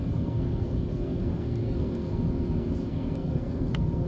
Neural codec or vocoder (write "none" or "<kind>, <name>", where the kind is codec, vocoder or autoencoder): codec, SNAC